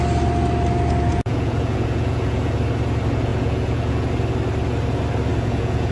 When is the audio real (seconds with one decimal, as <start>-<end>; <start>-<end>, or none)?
0.0-1.1; 2.6-3.3; 4.1-5.3